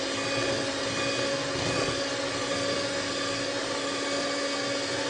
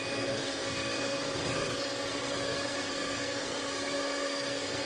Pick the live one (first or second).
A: first